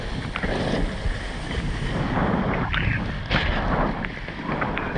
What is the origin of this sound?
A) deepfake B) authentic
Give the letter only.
B